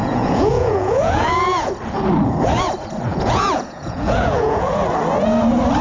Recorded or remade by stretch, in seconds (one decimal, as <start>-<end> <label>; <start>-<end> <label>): 0.0-1.7 remade; 1.7-3.1 recorded; 3.1-4.8 remade; 4.8-5.8 recorded